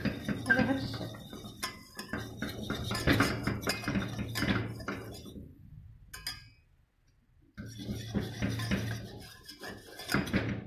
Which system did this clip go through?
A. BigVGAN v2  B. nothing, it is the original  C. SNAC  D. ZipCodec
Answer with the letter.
B